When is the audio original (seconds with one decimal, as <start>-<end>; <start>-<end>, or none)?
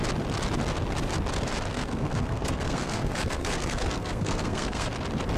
0.0-1.7; 4.9-5.4